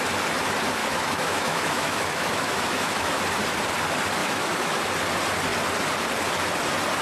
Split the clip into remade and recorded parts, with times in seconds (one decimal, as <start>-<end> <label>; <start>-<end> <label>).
0.0-0.8 recorded; 0.8-3.2 remade; 3.2-4.2 recorded; 4.2-4.8 remade; 4.8-7.0 recorded

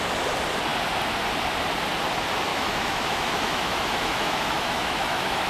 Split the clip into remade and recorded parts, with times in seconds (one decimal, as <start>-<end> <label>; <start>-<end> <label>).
0.0-2.5 recorded; 2.5-5.5 remade

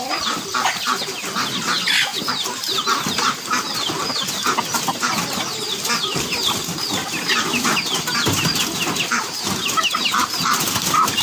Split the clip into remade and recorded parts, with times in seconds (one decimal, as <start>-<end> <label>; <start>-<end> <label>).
0.0-11.2 recorded

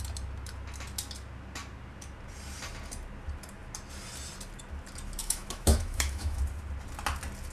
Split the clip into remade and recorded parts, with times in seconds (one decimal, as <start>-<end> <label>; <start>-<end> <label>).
0.0-5.2 recorded; 5.2-6.4 remade; 6.4-7.5 recorded

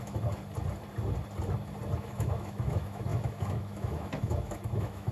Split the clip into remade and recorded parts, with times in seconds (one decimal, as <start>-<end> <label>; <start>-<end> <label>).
0.0-0.4 remade; 0.4-2.0 recorded; 2.0-5.1 remade

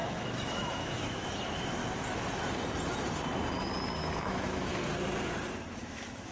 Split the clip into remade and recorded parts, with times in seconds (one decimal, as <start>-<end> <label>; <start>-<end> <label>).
0.0-1.8 remade; 1.8-4.0 recorded; 4.0-4.7 remade; 4.7-5.7 recorded; 5.7-6.3 remade